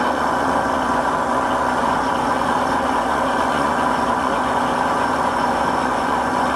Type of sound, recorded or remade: remade